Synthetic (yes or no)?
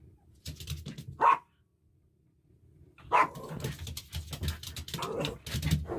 no